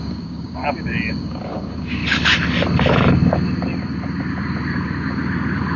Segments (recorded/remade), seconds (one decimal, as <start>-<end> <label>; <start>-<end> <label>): 0.0-0.6 remade; 0.6-1.2 recorded; 1.2-2.0 remade; 2.0-5.8 recorded